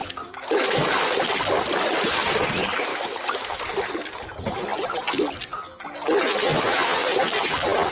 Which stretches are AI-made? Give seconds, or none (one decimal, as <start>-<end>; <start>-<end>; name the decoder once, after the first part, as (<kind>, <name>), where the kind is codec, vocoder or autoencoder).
0.0-0.9 (autoencoder, DAC-VAE); 2.9-3.6